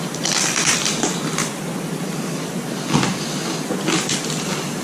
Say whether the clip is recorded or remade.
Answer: recorded